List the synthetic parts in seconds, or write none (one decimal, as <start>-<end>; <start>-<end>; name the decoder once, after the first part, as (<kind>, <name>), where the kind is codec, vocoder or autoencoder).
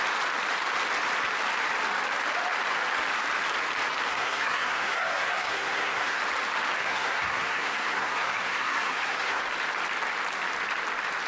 4.1-6.2 (codec, SNAC); 6.8-9.4